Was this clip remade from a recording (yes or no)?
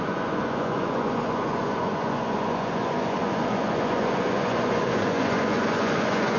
yes